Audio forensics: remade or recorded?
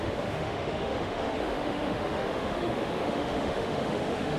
remade